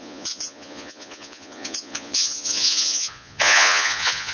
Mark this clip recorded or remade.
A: remade